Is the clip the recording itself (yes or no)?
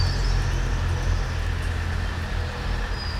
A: yes